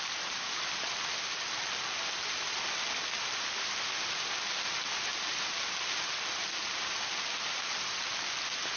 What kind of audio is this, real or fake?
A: real